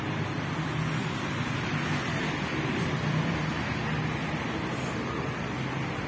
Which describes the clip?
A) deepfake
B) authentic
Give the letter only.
B